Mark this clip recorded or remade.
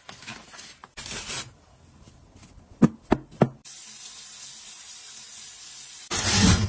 recorded